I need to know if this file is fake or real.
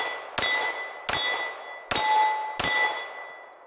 real